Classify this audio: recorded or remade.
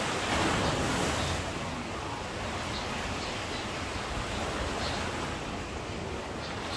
recorded